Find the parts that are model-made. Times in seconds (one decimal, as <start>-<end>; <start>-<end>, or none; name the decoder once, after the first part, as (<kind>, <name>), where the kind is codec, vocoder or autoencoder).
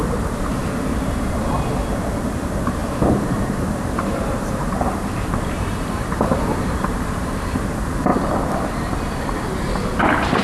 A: 0.0-0.6 (vocoder, BigVGAN v2); 2.4-8.1